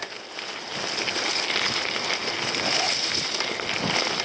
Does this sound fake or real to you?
real